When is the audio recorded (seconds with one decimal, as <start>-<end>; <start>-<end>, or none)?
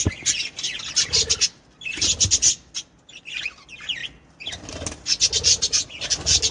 0.0-6.5